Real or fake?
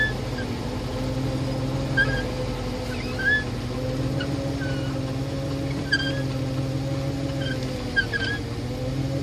real